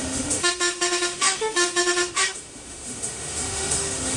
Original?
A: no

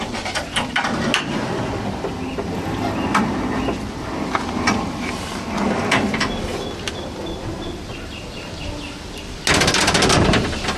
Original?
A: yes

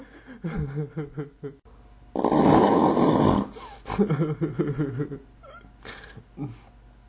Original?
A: yes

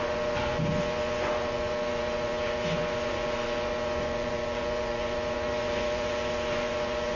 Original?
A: no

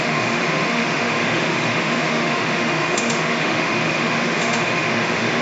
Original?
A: no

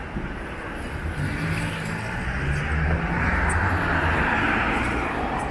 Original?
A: yes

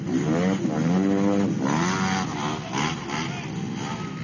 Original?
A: yes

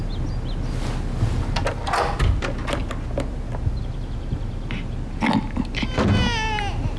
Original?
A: yes